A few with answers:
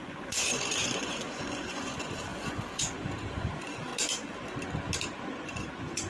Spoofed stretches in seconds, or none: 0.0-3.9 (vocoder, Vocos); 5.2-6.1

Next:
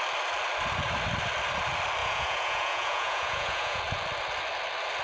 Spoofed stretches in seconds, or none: 2.0-3.8 (vocoder, Vocos)

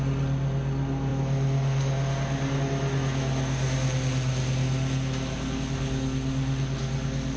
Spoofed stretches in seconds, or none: none

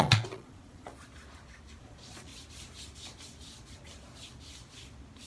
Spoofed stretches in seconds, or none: 0.0-0.9 (vocoder, Vocos); 1.8-2.3

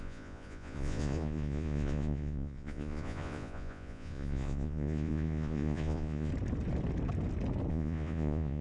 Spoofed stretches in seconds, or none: 0.0-6.3 (vocoder, Vocos); 7.7-8.6